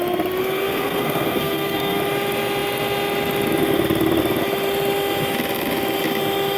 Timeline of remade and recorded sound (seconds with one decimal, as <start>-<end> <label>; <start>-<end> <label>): 0.0-0.4 recorded; 0.4-2.0 remade; 2.0-6.6 recorded